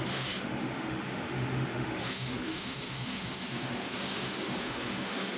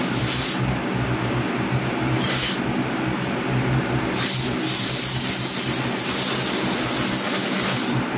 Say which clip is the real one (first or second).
second